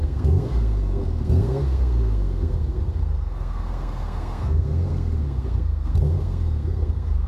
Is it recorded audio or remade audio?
remade